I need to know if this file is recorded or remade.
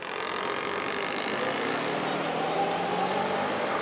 recorded